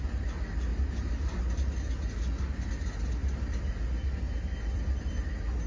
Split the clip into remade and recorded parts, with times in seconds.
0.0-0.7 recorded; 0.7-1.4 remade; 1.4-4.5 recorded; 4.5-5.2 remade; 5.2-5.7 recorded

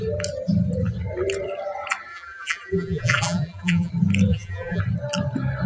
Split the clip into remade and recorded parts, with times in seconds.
0.0-2.1 recorded; 2.1-3.9 remade; 3.9-4.3 recorded; 4.3-4.8 remade; 4.8-5.7 recorded

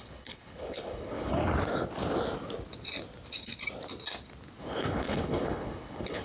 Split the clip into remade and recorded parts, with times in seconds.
0.0-1.4 remade; 1.4-4.6 recorded; 4.6-6.2 remade

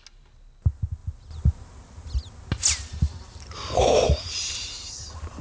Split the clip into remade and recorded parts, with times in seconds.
0.0-5.4 recorded

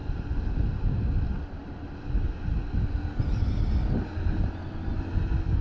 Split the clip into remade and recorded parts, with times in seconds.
0.0-5.6 recorded

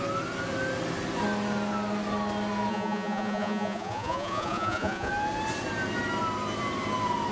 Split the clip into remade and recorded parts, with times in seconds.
0.0-2.7 recorded; 2.7-5.1 remade; 5.1-7.3 recorded

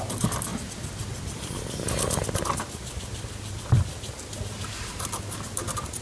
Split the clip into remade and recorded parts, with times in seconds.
0.0-6.0 recorded

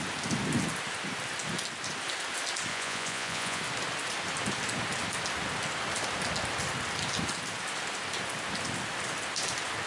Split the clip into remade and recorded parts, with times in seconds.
0.0-2.7 recorded; 2.7-3.6 remade; 3.6-9.9 recorded